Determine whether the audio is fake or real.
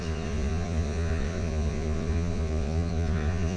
fake